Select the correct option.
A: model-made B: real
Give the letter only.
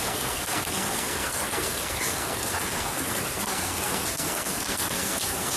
A